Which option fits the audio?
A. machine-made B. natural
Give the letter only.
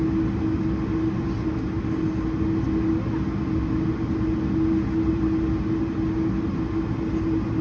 B